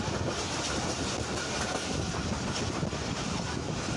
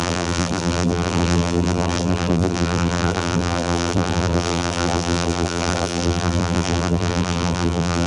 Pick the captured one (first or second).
first